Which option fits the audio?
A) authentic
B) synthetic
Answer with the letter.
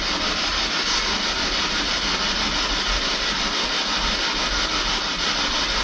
A